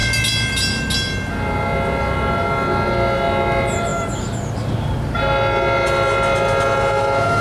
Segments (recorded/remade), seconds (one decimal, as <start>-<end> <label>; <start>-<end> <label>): 0.0-7.4 recorded